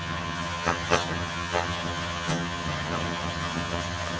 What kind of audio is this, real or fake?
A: fake